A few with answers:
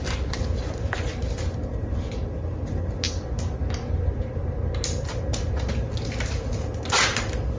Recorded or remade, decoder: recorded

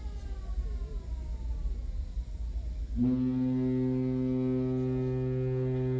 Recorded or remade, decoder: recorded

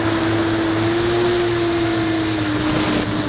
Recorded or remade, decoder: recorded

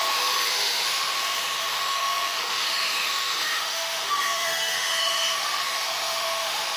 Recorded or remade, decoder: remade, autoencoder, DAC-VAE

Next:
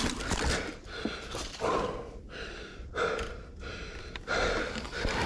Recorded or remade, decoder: recorded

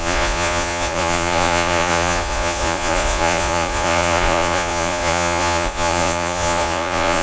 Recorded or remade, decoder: remade, vocoder, Vocos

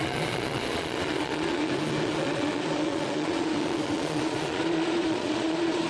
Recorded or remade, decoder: remade, vocoder, Vocos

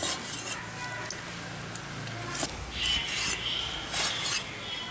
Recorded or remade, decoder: recorded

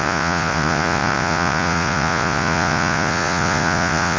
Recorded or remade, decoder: remade, vocoder, Vocos